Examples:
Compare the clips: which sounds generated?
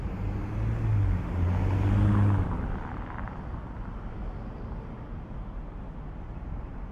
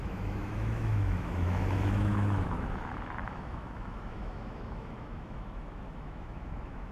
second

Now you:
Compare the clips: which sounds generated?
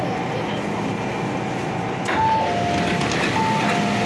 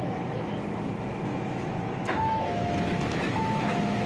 second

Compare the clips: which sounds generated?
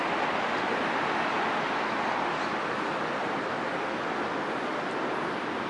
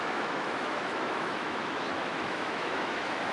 second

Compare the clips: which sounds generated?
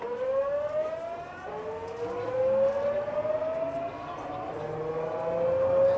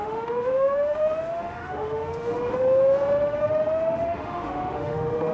second